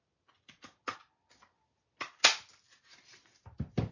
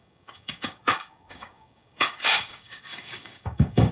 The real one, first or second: first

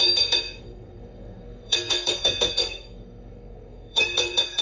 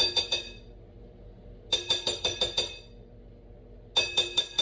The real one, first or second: second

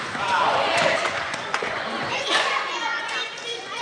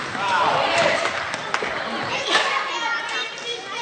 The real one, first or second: second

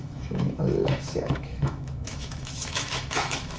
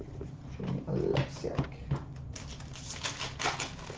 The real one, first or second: second